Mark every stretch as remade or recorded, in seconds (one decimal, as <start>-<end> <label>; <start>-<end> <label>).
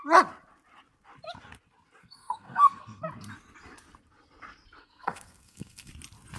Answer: 0.0-2.0 recorded; 2.0-3.0 remade; 3.0-4.8 recorded; 4.8-5.9 remade; 5.9-6.4 recorded